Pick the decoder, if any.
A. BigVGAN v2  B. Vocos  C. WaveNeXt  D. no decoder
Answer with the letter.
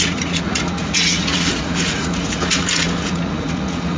B